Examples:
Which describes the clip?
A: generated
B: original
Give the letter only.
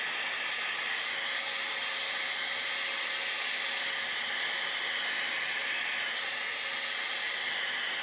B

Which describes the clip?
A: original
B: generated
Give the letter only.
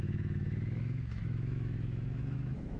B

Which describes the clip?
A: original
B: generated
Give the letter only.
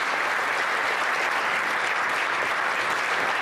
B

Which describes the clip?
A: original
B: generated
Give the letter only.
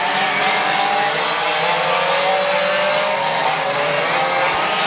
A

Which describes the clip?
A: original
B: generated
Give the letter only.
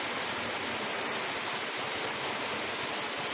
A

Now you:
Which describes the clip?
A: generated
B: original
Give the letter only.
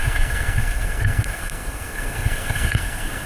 A